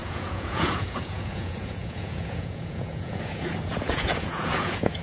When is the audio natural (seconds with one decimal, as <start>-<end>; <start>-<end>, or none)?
none